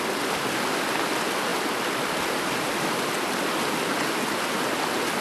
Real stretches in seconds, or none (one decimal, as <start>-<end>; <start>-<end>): 0.0-5.2